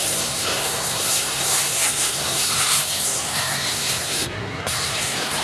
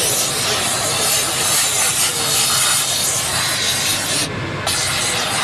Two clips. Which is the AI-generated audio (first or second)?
first